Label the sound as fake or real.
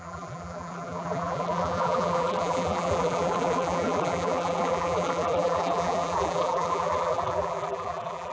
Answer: fake